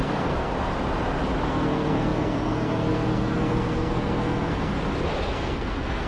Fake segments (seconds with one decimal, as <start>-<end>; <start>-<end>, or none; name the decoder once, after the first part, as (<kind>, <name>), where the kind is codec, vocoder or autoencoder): 0.0-0.5 (codec, SNAC); 1.4-4.7; 5.2-6.1